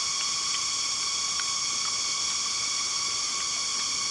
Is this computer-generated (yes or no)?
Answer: no